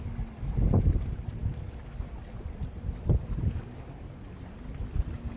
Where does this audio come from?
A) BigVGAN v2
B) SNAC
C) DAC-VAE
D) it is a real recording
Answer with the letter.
D